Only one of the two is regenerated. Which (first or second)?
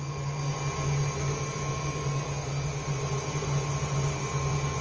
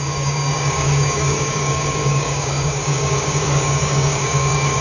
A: second